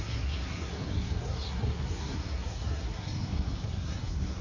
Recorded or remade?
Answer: remade